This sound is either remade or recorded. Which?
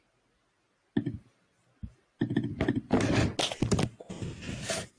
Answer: recorded